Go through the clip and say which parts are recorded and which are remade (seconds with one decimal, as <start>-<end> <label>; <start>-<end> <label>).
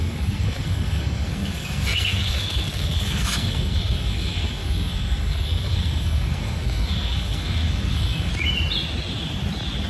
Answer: 0.0-8.3 remade; 8.3-9.9 recorded